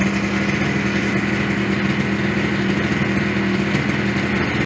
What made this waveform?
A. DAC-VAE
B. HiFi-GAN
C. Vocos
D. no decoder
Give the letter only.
D